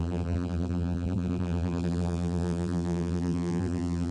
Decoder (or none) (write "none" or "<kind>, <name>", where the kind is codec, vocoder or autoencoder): vocoder, BigVGAN v2